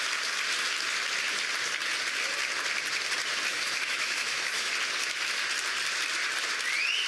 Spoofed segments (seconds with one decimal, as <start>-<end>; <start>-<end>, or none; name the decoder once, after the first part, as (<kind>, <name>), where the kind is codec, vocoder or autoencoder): 3.5-4.7 (autoencoder, DAC-VAE)